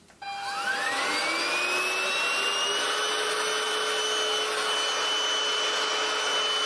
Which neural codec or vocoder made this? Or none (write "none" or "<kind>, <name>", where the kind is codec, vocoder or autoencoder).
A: none